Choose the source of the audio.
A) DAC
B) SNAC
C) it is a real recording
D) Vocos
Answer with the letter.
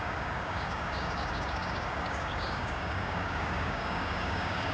A